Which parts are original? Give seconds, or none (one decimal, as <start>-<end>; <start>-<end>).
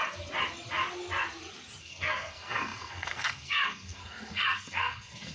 0.0-1.8